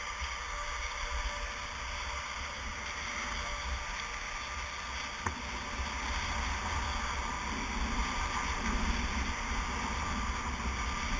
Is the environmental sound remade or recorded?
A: recorded